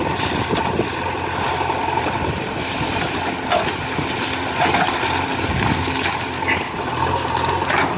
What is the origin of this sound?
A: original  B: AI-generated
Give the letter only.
A